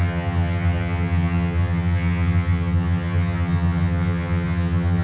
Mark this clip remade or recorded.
remade